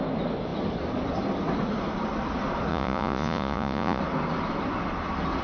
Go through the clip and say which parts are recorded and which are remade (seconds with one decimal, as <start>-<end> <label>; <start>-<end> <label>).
0.0-2.7 recorded; 2.7-4.0 remade; 4.0-5.4 recorded